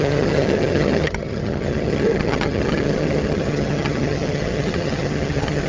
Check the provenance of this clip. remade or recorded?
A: remade